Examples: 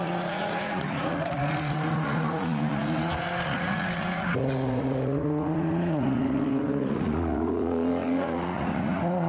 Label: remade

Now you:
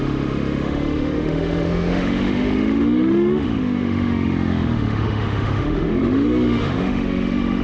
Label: remade